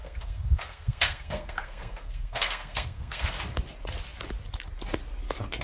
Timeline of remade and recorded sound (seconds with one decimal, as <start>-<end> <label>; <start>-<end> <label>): 0.0-3.4 remade; 3.4-5.6 recorded